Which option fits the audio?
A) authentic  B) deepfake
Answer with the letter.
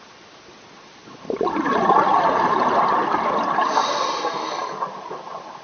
A